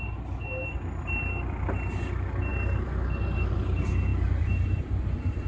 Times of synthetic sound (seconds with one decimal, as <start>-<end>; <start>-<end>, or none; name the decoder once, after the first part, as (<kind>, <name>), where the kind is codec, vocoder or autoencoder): 4.1-5.0 (vocoder, BigVGAN v2)